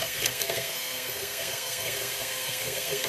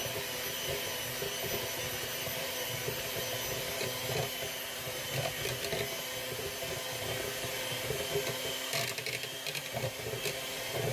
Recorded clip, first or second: second